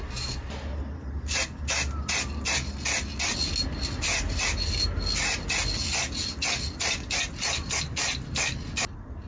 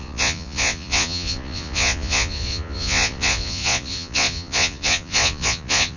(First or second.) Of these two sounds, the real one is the first